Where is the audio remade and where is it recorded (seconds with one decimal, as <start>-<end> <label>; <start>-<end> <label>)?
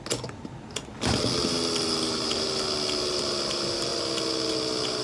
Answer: 0.0-5.0 recorded